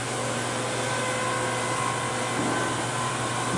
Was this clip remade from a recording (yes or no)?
no